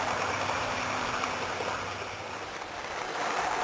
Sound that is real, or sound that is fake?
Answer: real